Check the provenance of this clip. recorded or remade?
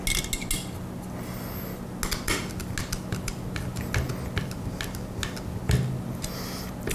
recorded